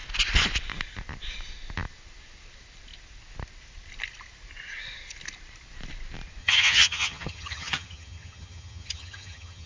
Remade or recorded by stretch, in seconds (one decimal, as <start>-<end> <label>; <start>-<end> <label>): 0.0-6.4 recorded; 6.4-9.7 remade